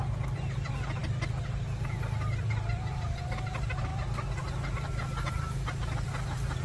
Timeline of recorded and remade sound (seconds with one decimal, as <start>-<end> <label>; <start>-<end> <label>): 0.0-6.6 recorded